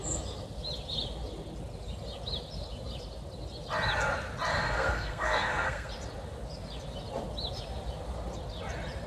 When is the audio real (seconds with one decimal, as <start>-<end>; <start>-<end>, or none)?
0.0-4.5; 5.9-9.1